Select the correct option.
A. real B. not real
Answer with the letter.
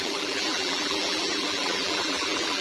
B